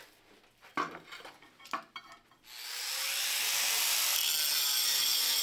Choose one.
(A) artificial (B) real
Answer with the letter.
B